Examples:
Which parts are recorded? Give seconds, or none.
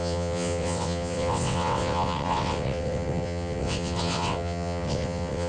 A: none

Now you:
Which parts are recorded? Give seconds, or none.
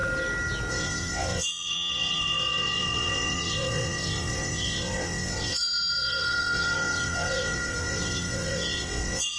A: 0.0-0.7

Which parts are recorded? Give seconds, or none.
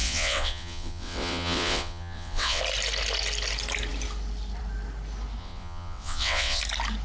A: 2.6-5.4; 6.6-7.0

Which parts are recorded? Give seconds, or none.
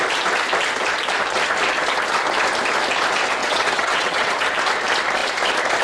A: 0.0-3.4; 4.3-5.8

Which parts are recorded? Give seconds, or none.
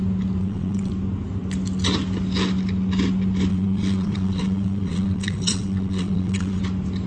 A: 0.0-0.4; 0.9-3.5; 6.6-7.1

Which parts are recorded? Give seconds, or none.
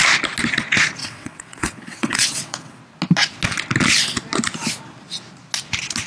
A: 0.0-1.0; 2.8-6.1